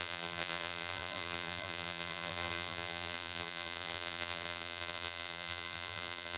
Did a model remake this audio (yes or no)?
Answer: yes